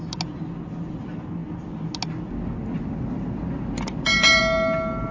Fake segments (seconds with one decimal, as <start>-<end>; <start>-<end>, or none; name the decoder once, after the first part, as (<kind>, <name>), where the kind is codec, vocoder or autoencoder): none